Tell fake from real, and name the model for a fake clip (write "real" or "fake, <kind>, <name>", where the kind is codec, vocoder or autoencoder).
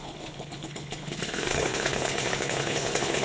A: fake, codec, HILCodec